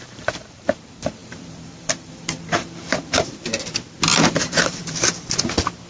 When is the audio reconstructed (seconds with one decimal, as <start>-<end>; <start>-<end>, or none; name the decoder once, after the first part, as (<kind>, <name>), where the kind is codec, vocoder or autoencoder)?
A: 0.0-3.5 (vocoder, BigVGAN v2); 4.2-4.8